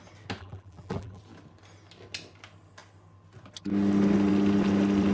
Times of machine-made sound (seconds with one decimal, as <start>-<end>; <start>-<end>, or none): 0.4-1.2